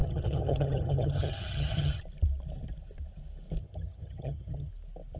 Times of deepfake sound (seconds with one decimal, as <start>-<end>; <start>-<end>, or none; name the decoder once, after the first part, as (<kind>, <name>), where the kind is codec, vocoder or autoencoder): 0.0-2.0 (vocoder, HiFi-GAN); 3.6-4.7